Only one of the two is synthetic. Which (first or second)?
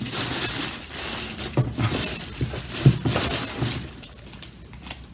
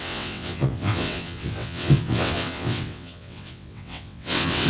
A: second